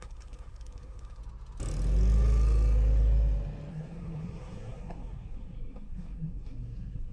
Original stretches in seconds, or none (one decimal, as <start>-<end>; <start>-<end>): 1.2-3.7